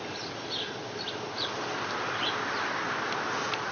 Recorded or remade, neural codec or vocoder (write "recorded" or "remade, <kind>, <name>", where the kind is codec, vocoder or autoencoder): recorded